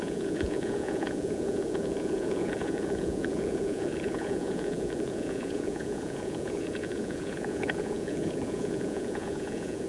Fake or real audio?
fake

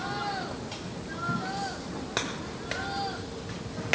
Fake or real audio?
real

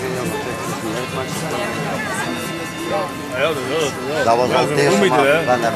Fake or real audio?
real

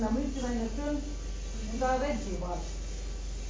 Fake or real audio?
real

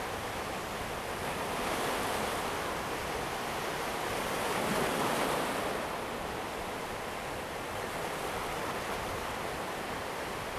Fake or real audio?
real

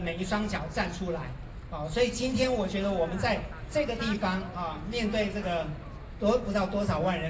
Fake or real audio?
real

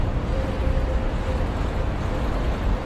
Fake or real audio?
real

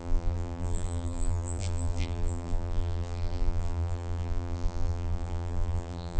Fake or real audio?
fake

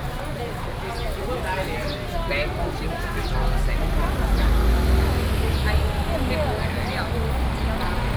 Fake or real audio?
real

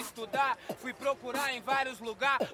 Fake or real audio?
real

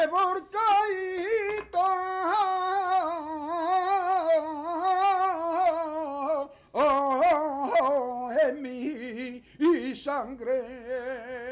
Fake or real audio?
real